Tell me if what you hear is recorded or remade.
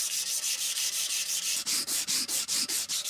remade